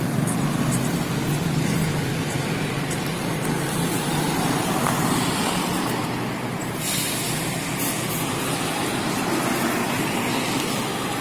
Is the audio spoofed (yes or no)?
no